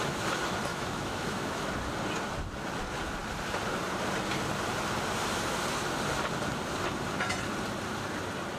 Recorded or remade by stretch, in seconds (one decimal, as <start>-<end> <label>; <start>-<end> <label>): 0.0-0.7 recorded; 0.7-1.7 remade; 1.7-8.6 recorded